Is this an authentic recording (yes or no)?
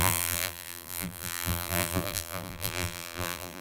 no